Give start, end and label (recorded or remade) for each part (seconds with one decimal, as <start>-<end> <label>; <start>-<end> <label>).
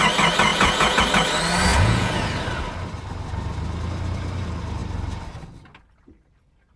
0.0-0.5 recorded; 0.5-1.0 remade; 1.0-1.7 recorded; 1.7-2.3 remade; 2.3-6.8 recorded